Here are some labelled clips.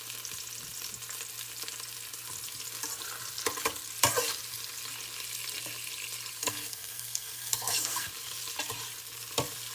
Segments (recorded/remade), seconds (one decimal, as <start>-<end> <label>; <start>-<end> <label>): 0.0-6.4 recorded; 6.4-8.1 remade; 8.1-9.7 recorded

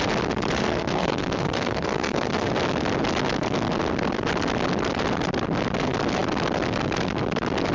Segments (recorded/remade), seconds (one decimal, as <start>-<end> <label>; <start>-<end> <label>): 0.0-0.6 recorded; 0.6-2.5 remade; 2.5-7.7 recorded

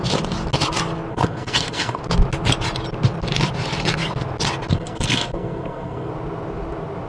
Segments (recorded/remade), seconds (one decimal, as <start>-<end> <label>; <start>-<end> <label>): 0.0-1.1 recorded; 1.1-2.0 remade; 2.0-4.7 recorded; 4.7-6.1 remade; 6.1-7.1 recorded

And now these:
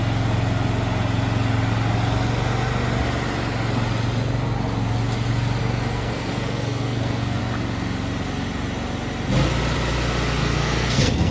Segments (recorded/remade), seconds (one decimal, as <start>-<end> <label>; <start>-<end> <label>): 0.0-5.6 recorded; 5.6-7.4 remade; 7.4-10.4 recorded; 10.4-11.3 remade

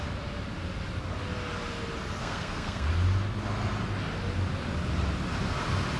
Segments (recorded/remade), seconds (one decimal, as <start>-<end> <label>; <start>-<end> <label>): 0.0-2.2 recorded; 2.2-2.9 remade; 2.9-6.0 recorded

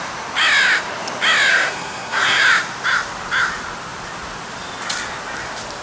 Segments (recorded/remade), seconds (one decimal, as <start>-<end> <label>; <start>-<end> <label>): 0.0-1.5 recorded; 1.5-2.4 remade; 2.4-5.8 recorded